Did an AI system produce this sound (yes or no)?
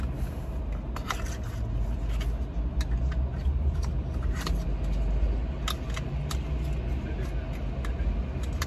no